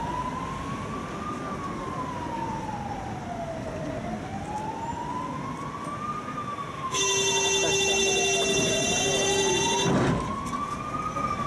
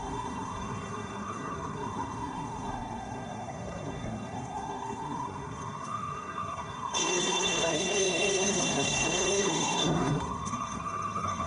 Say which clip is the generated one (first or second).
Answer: second